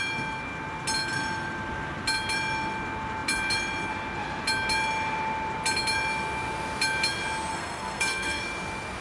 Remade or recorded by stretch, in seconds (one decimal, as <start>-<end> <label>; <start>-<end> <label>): 0.0-7.5 recorded; 7.5-8.4 remade; 8.4-9.0 recorded